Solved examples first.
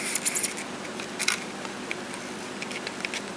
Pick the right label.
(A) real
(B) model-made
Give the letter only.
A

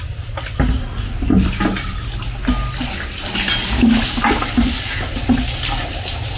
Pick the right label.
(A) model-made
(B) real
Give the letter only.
B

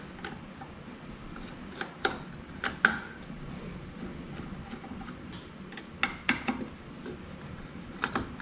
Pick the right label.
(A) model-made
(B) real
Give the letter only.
B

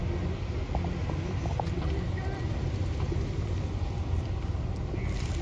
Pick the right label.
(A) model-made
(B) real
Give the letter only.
B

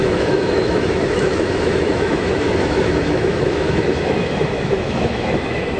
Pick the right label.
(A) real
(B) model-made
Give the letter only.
B